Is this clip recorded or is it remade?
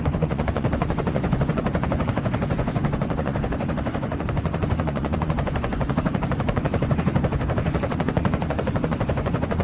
remade